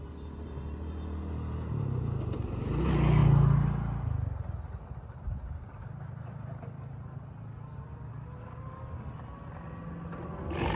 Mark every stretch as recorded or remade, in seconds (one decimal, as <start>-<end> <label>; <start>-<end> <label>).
0.0-10.8 recorded